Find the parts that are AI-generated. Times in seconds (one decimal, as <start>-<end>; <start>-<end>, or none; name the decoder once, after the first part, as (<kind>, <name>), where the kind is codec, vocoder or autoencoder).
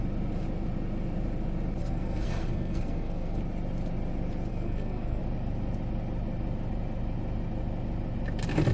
1.8-3.4 (codec, SNAC); 4.5-5.2